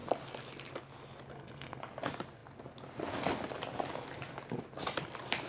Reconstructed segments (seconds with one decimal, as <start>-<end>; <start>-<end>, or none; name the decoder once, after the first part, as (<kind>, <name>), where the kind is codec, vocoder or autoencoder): 1.3-1.8 (codec, SNAC)